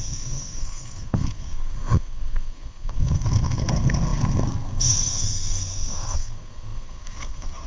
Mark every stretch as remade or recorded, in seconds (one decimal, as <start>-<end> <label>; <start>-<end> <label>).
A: 0.0-7.7 remade